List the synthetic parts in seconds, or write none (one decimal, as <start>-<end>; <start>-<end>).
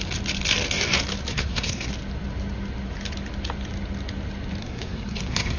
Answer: 1.3-1.9; 4.6-5.6